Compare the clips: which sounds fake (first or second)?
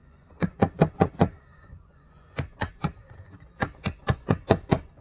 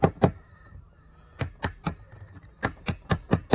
first